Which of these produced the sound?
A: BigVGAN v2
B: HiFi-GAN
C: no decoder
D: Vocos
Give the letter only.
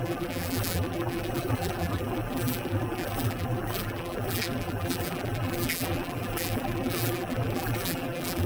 A